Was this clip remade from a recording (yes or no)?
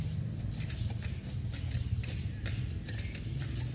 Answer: no